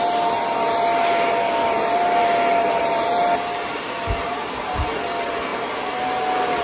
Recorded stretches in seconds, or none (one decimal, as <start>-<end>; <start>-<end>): 0.0-6.6

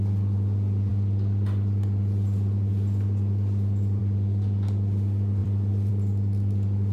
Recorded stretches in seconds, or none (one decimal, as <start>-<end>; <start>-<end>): 0.0-5.4; 5.9-6.9

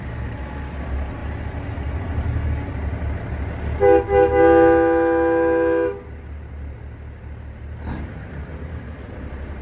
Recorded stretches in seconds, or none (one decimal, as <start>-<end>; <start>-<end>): 0.0-9.6